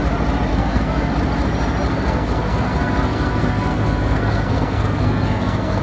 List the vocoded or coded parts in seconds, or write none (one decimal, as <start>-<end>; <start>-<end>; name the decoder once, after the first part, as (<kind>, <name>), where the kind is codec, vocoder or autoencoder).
0.5-1.1 (codec, SNAC); 1.9-5.8